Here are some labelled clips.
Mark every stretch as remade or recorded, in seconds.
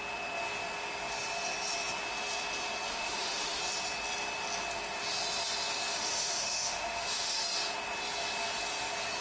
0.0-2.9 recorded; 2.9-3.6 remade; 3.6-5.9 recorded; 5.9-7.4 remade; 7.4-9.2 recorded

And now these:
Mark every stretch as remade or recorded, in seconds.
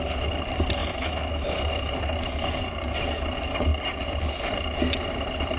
0.0-0.8 recorded; 0.8-1.9 remade; 1.9-5.6 recorded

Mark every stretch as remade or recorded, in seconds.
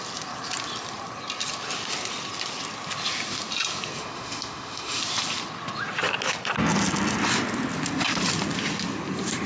0.0-4.0 recorded; 4.0-5.0 remade; 5.0-9.5 recorded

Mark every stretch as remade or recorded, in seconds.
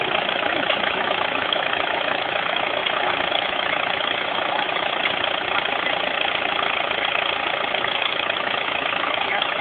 0.0-2.8 remade; 2.8-3.3 recorded; 3.3-5.0 remade; 5.0-7.8 recorded; 7.8-9.6 remade